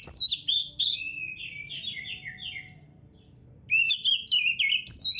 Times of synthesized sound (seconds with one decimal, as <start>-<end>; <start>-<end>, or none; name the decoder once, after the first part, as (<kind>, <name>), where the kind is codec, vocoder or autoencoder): none